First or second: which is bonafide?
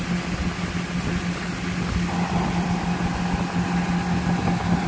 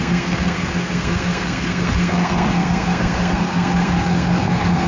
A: first